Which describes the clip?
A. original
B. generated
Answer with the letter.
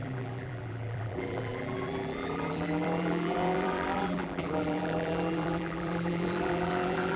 B